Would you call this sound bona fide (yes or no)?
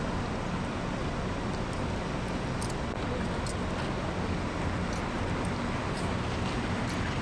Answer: yes